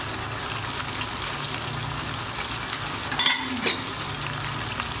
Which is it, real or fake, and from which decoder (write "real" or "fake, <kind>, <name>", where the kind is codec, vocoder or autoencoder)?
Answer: real